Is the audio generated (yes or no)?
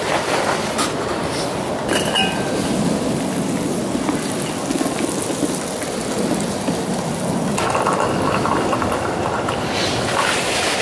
no